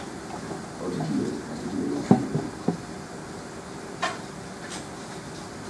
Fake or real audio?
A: real